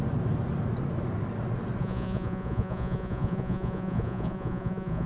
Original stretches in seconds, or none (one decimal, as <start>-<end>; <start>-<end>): 0.0-1.8